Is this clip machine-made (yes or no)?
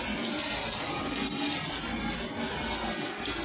no